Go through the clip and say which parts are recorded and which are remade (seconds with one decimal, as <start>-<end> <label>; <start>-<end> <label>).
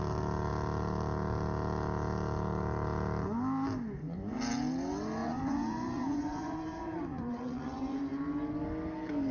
0.0-5.2 recorded; 5.2-8.2 remade; 8.2-9.3 recorded